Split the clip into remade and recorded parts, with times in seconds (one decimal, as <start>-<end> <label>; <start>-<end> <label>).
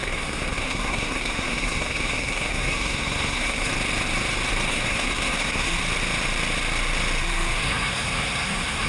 0.0-3.7 remade; 3.7-4.7 recorded; 4.7-5.8 remade; 5.8-7.2 recorded; 7.2-8.9 remade